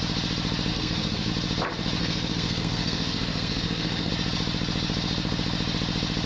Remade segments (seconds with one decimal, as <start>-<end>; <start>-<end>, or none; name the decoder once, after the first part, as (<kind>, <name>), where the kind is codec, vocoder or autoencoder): 0.7-1.3 (codec, SNAC); 2.0-4.1